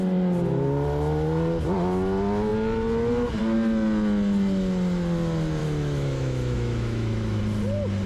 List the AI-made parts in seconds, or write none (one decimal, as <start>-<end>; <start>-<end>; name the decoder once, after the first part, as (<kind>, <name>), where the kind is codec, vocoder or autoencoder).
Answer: 5.6-7.4 (autoencoder, DAC-VAE)